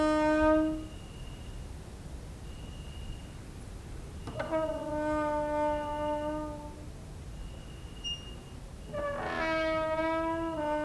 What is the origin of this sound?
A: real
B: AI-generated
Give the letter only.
A